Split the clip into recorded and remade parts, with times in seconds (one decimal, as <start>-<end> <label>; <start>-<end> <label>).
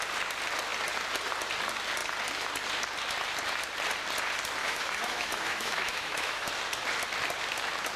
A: 0.0-4.6 recorded; 4.6-6.5 remade; 6.5-8.0 recorded